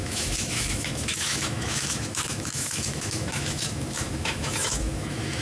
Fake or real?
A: fake